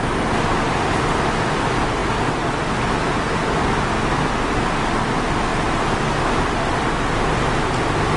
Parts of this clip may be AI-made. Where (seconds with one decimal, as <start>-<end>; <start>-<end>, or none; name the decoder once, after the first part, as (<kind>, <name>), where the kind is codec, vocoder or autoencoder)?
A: none